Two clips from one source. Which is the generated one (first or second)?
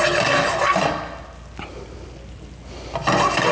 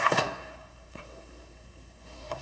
second